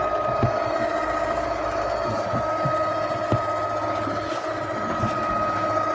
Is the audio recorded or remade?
recorded